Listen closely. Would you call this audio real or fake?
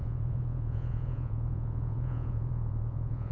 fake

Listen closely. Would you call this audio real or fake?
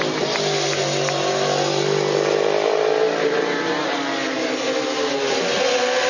real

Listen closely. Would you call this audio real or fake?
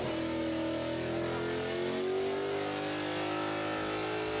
real